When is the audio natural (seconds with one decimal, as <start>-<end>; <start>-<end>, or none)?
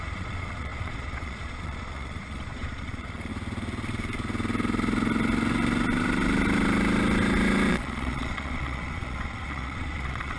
3.3-7.7